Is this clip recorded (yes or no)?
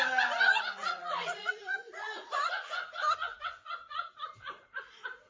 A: no